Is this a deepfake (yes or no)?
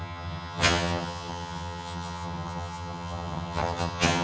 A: yes